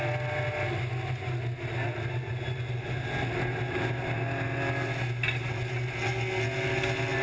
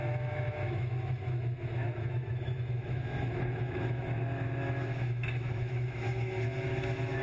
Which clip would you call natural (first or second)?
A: first